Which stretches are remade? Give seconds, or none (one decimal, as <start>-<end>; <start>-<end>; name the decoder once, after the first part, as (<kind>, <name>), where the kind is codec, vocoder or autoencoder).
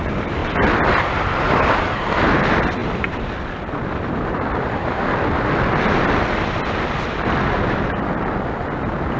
0.4-1.2 (vocoder, BigVGAN v2); 2.8-7.9